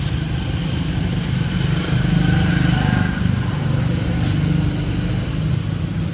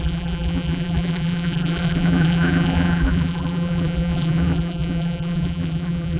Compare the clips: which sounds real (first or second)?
first